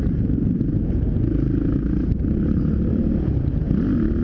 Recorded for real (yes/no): yes